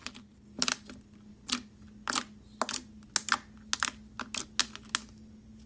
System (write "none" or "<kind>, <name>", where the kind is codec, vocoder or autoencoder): none